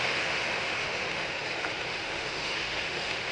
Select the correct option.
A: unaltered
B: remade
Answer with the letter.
B